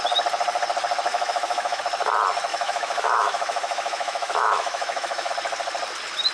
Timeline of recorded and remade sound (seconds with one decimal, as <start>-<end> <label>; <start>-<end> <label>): 0.0-1.1 recorded; 1.1-1.8 remade; 1.8-2.5 recorded; 2.5-5.3 remade; 5.3-6.3 recorded